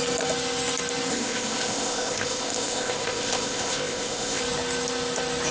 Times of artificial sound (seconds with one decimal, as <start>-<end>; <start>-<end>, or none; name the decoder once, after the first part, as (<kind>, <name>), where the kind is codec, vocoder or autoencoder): 1.1-4.4 (codec, ZipCodec)